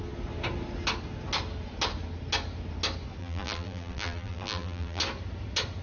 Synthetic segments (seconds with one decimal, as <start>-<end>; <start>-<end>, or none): 3.2-5.0